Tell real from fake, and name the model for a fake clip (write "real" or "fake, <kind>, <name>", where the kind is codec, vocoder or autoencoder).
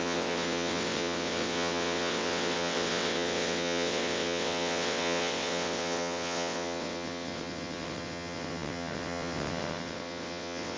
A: fake, vocoder, WaveNeXt